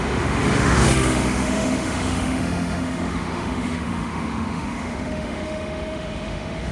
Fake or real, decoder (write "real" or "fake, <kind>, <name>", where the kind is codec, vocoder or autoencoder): fake, autoencoder, DAC-VAE